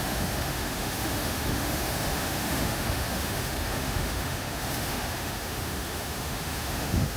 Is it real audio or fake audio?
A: fake